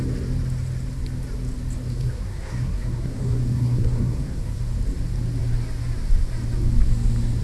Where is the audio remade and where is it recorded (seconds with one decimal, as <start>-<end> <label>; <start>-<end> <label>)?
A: 0.0-1.9 recorded; 1.9-4.6 remade; 4.6-7.4 recorded